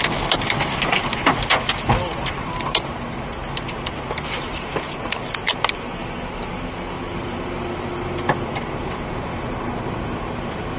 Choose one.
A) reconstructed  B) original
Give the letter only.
B